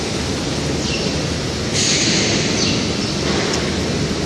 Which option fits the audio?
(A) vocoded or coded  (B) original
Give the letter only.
B